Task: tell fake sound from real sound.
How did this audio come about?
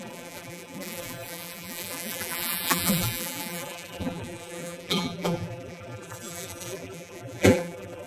fake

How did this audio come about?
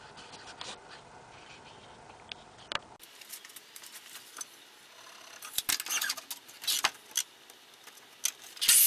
real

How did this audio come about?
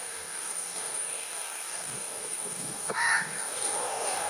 fake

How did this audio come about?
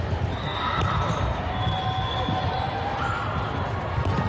real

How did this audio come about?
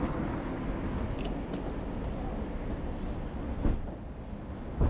real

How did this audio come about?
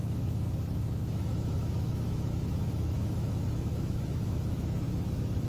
fake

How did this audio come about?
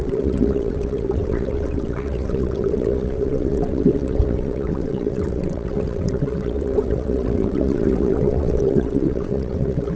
fake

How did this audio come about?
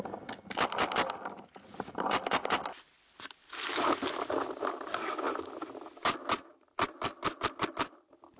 real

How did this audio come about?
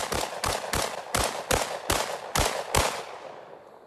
real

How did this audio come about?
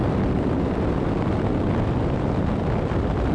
real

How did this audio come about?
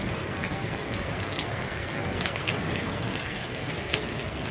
fake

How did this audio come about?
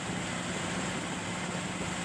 real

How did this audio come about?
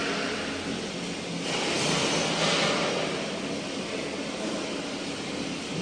real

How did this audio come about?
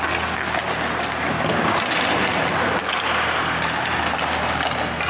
real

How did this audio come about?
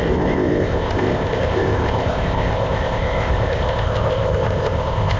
fake